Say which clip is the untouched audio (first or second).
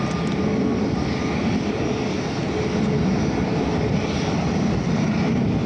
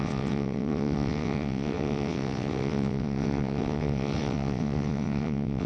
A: first